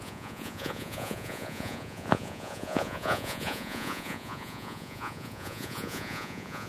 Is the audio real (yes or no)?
no